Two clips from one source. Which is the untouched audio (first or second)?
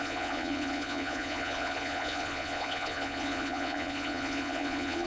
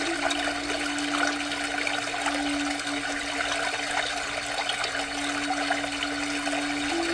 second